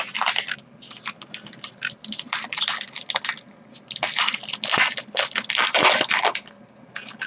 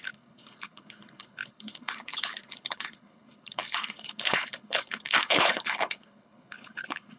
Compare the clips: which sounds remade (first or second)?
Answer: second